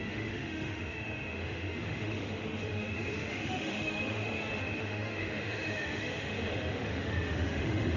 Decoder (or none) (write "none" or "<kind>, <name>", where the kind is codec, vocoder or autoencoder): autoencoder, DAC-VAE